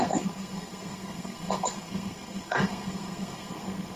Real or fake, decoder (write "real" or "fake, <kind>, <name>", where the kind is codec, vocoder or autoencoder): fake, codec, SNAC